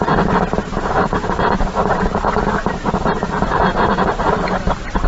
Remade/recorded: remade